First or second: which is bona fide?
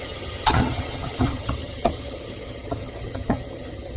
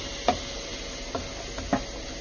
second